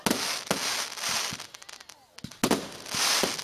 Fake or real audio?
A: real